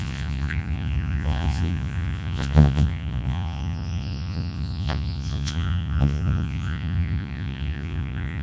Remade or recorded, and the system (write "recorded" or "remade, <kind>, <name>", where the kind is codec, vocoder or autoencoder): remade, vocoder, Vocos